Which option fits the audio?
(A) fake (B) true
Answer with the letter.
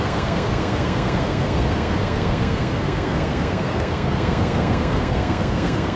A